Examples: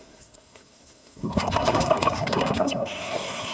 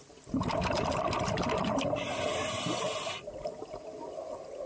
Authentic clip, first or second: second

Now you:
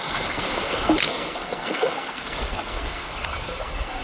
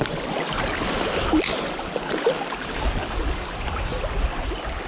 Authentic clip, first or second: second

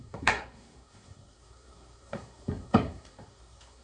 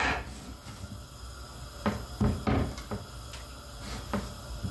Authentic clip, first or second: second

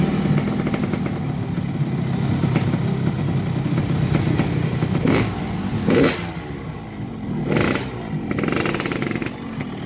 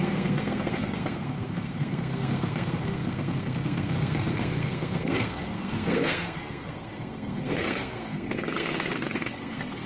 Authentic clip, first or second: first